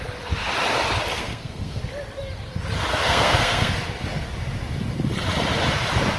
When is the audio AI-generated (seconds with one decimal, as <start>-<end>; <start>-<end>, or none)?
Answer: 1.1-1.8; 2.9-3.7